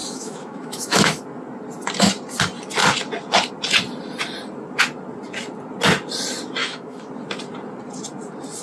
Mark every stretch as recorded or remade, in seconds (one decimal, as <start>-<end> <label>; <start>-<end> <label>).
0.0-1.2 remade; 1.2-6.6 recorded; 6.6-7.1 remade; 7.1-8.6 recorded